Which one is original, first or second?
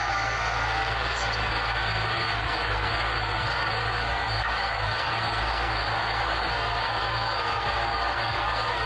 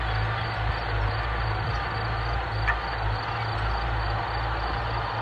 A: second